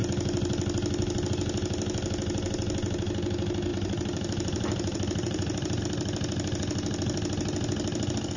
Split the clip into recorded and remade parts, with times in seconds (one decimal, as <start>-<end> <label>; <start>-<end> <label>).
0.0-3.7 recorded; 3.7-5.8 remade; 5.8-8.4 recorded